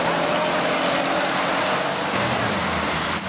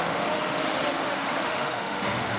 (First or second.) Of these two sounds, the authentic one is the first